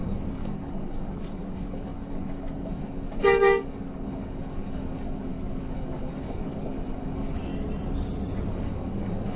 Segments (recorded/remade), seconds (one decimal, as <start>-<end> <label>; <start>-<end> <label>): 0.0-7.5 remade; 7.5-8.5 recorded; 8.5-9.4 remade